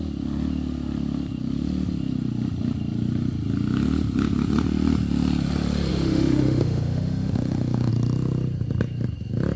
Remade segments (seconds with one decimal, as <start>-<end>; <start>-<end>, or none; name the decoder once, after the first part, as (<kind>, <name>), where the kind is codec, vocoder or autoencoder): 5.9-7.9 (autoencoder, DAC-VAE)